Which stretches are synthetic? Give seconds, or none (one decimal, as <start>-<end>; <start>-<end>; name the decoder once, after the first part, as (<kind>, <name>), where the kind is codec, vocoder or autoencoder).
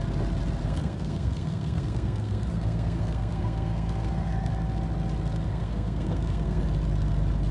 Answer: 0.6-4.5 (codec, SNAC); 5.5-6.6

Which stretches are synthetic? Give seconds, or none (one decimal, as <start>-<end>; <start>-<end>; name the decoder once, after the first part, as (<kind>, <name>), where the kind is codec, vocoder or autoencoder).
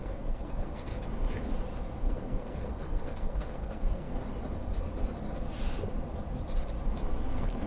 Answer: 0.0-0.9 (codec, SNAC); 2.0-4.2; 7.3-7.7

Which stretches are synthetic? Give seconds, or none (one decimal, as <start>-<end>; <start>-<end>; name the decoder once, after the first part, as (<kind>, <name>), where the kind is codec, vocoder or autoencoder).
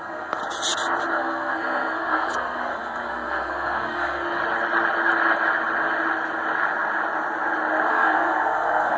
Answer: 0.0-0.4 (codec, SNAC); 1.1-4.4; 7.9-9.0